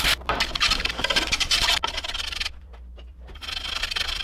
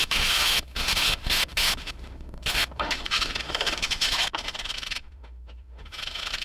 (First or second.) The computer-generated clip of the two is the second